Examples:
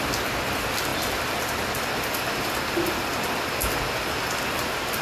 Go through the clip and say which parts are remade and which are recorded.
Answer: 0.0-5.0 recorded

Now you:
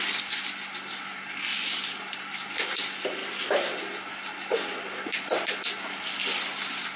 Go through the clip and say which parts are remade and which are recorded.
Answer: 0.0-7.0 recorded

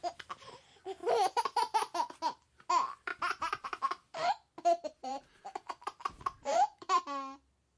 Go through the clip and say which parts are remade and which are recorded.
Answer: 0.0-5.1 recorded; 5.1-7.0 remade; 7.0-7.8 recorded

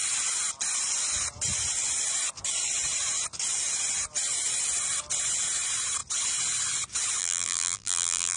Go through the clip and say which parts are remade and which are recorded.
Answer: 0.0-7.2 recorded; 7.2-8.4 remade